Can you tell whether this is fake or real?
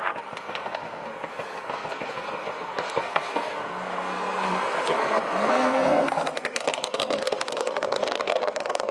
fake